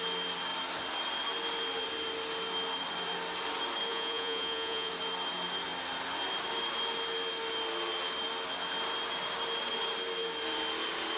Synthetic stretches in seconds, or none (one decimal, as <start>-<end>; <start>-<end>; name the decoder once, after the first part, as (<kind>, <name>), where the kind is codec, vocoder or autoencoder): 3.9-4.9 (vocoder, Vocos)